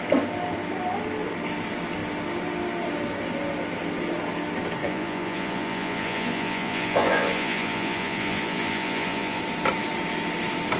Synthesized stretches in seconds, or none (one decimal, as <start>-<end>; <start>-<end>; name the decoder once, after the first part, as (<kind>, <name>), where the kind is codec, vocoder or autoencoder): 4.8-9.4 (vocoder, Vocos)